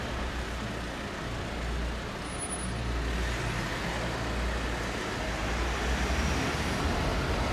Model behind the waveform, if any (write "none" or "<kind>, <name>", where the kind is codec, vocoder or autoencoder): none